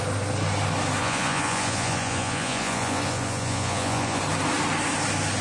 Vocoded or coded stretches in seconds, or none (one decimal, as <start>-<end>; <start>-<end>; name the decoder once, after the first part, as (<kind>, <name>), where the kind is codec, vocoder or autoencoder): 1.0-4.2 (vocoder, Vocos)